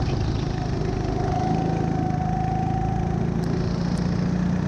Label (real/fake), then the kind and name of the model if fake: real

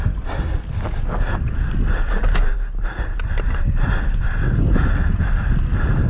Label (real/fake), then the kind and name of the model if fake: real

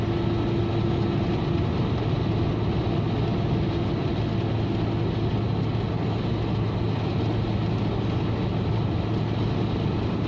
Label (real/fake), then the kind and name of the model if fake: real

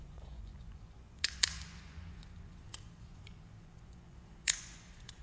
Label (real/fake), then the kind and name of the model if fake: fake, vocoder, Vocos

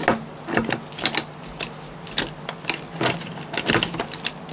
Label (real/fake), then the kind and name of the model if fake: real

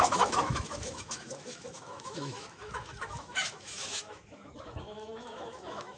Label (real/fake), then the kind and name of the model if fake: fake, autoencoder, DAC-VAE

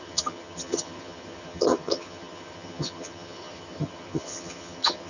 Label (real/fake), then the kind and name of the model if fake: fake, vocoder, HiFi-GAN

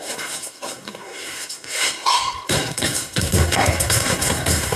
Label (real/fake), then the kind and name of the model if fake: fake, codec, SNAC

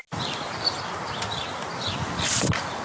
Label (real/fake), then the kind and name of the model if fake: real